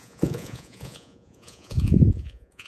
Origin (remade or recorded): remade